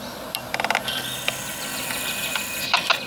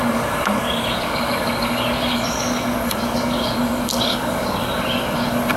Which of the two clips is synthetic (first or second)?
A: second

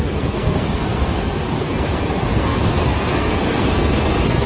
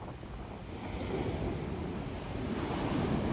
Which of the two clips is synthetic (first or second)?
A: first